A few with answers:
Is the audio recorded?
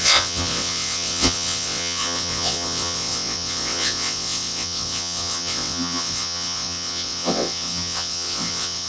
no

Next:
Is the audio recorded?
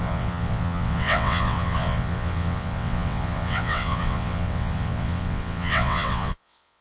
no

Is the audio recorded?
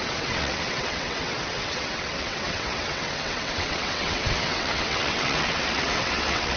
no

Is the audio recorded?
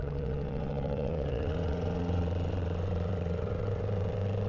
no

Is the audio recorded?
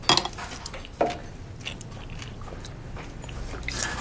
yes